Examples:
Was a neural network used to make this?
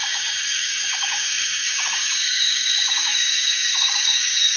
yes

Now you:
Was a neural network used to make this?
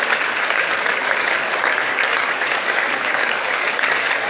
yes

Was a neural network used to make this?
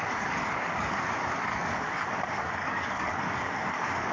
yes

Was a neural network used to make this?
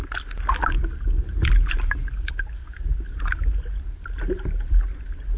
no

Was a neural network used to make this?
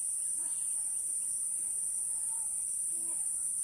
no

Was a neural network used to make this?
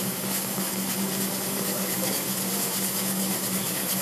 yes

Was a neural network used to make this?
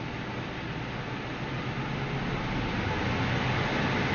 no